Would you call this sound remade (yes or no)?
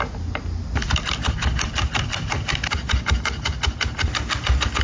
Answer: no